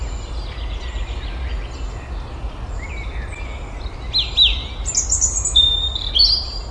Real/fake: real